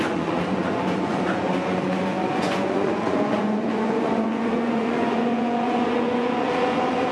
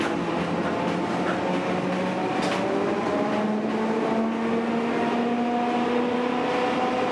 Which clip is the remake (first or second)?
first